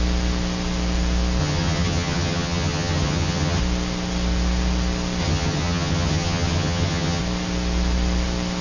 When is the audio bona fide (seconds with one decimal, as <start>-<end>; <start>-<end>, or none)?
0.0-1.4; 3.6-5.2; 7.2-8.6